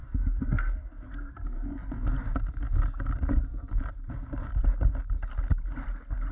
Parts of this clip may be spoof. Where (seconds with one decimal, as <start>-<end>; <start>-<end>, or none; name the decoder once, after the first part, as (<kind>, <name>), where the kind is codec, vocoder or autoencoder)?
none